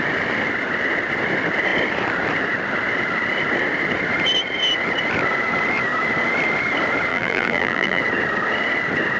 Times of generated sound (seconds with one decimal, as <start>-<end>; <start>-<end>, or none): 7.1-8.0